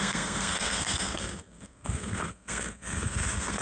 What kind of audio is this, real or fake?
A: fake